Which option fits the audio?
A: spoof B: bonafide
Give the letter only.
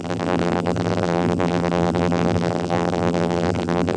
A